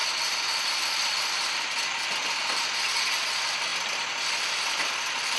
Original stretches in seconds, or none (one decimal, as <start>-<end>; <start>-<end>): 0.0-5.4